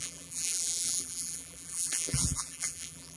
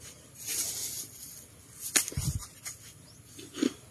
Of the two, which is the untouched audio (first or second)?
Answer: second